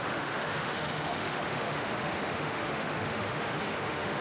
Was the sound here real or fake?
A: fake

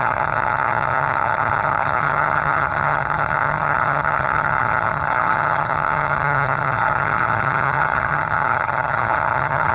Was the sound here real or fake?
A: fake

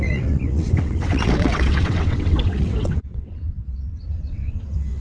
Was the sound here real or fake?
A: fake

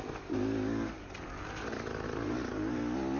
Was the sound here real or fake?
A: real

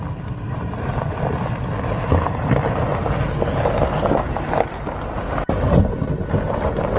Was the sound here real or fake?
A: real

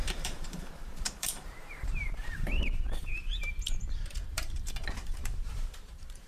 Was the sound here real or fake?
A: fake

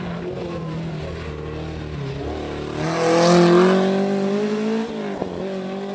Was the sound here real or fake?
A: real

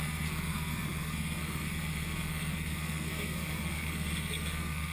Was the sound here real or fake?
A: fake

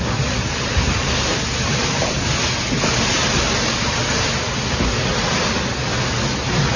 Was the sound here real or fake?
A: real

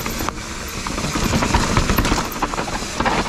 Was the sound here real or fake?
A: real